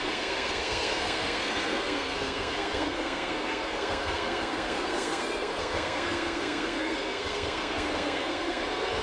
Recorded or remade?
remade